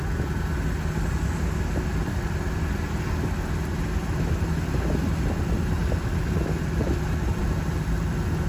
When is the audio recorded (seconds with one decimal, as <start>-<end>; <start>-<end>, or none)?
0.0-1.9; 2.6-5.8; 7.4-8.5